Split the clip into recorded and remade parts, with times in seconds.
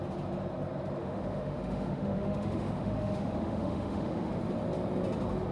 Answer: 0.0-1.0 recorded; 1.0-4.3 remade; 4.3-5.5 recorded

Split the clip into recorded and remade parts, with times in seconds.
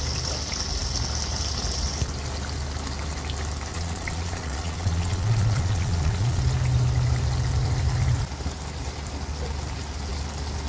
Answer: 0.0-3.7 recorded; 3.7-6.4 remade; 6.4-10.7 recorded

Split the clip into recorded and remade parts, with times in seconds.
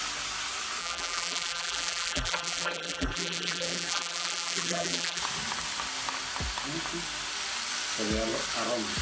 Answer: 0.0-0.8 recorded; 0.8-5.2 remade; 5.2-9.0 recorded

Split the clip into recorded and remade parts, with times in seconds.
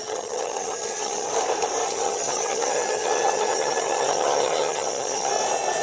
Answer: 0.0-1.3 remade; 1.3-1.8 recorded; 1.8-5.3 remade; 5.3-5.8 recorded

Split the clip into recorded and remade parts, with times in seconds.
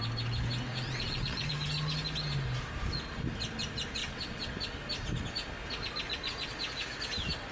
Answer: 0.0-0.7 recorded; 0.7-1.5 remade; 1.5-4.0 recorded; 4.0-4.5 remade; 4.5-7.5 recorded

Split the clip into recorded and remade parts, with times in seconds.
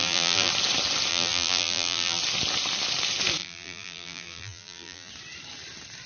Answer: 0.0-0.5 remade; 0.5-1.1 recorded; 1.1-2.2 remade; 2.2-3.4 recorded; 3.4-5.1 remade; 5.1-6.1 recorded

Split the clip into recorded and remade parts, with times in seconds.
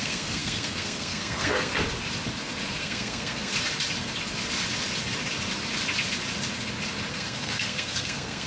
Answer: 0.0-1.7 remade; 1.7-2.8 recorded; 2.8-3.5 remade; 3.5-7.1 recorded; 7.1-8.5 remade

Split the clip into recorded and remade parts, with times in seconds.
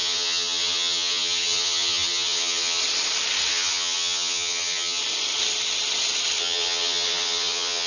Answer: 0.0-2.8 remade; 2.8-3.5 recorded; 3.5-5.0 remade; 5.0-6.4 recorded; 6.4-7.9 remade